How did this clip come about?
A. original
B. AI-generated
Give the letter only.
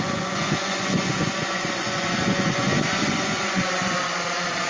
B